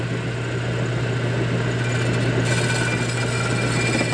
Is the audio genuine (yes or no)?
yes